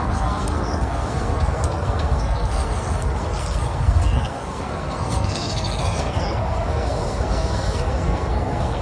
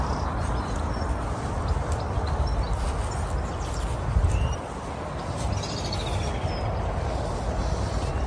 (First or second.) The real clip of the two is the second